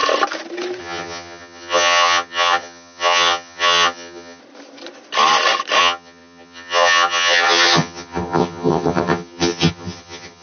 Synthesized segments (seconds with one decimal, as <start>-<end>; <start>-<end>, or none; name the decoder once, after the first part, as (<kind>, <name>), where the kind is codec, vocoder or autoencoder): 0.8-4.4 (vocoder, HiFi-GAN); 5.8-10.4